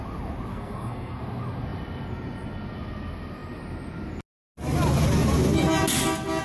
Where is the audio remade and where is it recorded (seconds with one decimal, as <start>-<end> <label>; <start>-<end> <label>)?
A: 0.0-0.5 recorded; 0.5-1.2 remade; 1.2-6.4 recorded